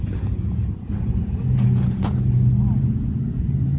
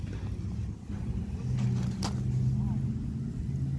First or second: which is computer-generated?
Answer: first